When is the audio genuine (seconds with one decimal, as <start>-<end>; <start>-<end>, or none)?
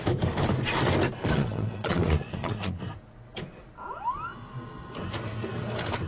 0.0-1.2; 2.8-6.1